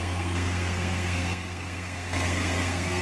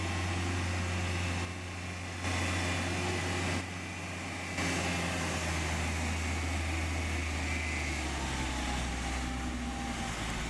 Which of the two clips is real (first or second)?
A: second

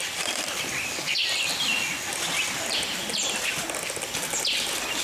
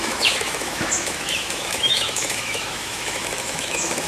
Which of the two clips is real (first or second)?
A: first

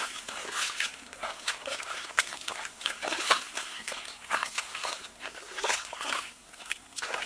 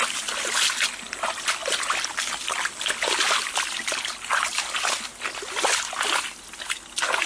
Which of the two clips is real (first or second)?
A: second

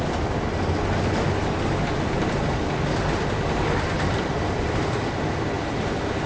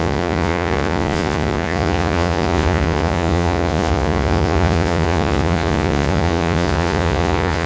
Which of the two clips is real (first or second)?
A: first